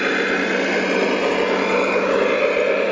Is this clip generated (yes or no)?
no